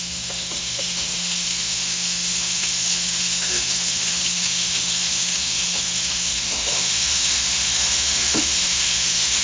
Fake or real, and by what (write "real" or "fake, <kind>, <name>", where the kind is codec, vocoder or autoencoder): fake, autoencoder, DAC-VAE